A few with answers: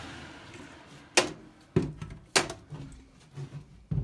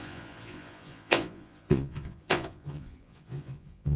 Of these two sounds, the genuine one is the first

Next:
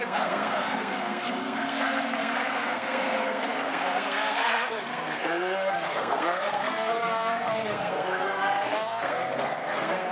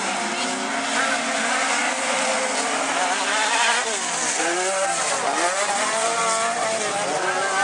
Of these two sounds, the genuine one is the second